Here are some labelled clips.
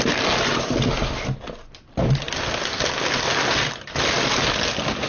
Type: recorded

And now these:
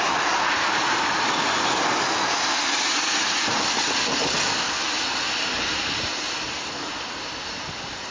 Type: recorded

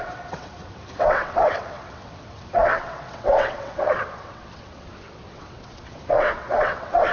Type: remade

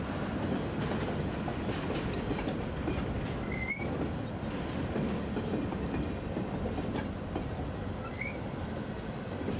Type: recorded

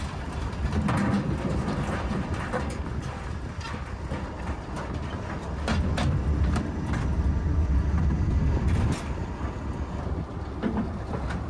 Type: recorded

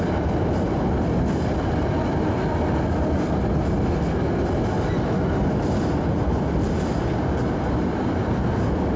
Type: recorded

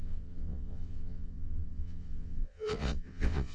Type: remade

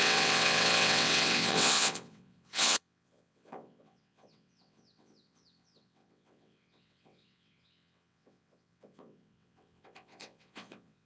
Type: remade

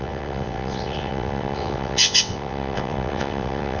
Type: remade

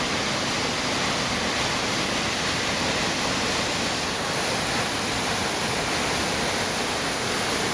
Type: recorded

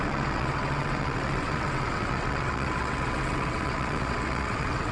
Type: remade